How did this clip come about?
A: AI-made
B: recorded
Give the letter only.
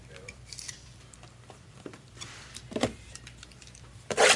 A